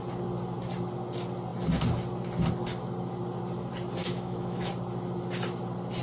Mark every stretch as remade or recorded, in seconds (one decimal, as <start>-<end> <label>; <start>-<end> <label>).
0.0-4.0 recorded; 4.0-4.7 remade; 4.7-6.0 recorded